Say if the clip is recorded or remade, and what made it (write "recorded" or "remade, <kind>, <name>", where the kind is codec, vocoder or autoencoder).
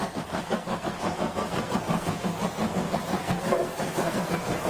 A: remade, codec, SNAC